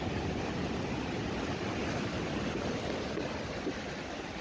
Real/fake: real